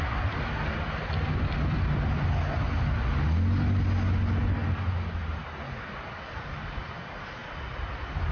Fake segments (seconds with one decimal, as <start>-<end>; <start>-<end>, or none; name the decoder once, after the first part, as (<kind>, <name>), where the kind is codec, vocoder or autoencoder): none